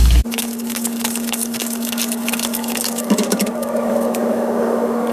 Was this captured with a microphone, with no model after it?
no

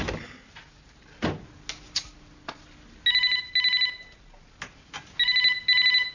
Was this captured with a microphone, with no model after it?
yes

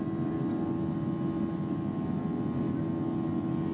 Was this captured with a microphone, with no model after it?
yes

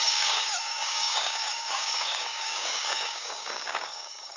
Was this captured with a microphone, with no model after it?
no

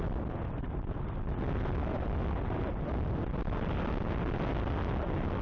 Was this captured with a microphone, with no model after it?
yes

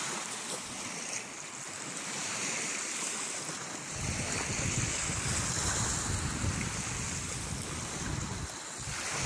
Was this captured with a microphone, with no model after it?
yes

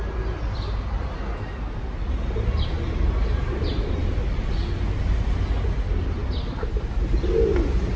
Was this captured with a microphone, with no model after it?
yes